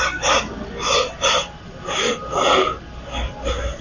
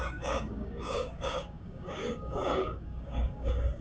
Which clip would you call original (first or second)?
first